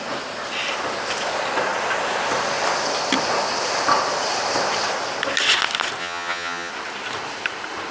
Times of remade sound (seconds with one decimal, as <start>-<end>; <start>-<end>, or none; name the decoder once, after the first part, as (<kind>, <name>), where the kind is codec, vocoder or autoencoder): 6.0-6.7 (vocoder, HiFi-GAN)